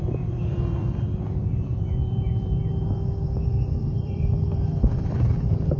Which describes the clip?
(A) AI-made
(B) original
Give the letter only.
A